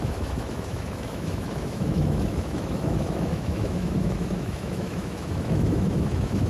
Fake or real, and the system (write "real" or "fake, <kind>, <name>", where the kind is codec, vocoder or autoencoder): fake, autoencoder, DAC-VAE